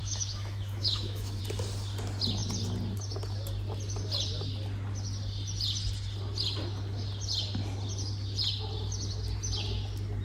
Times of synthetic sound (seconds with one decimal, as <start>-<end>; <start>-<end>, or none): 0.0-1.4